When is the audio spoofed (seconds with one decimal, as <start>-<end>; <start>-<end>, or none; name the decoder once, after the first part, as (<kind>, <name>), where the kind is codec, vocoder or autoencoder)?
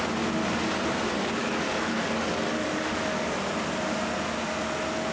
1.2-3.3 (codec, DAC)